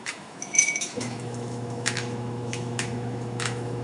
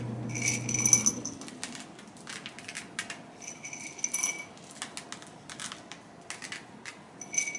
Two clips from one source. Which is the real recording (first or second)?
second